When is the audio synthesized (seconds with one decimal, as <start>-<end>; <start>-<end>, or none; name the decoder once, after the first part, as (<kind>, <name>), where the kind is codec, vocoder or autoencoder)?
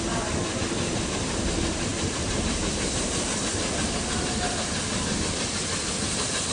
1.9-3.4 (vocoder, BigVGAN v2)